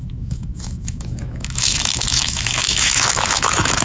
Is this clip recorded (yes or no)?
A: no